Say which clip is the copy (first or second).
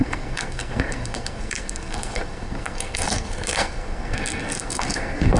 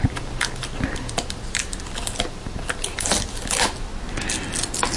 first